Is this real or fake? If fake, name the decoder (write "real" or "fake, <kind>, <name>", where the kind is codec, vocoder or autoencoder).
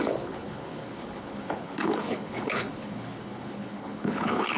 fake, codec, HILCodec